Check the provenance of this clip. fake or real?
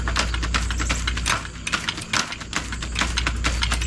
real